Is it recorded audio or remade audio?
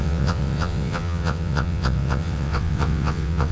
remade